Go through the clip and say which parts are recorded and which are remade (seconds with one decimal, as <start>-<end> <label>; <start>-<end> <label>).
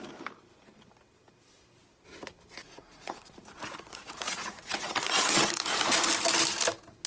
0.0-2.6 recorded; 2.6-5.8 remade; 5.8-7.1 recorded